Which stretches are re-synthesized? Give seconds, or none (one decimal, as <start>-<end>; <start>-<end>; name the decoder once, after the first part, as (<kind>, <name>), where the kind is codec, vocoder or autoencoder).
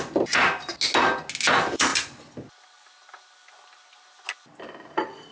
none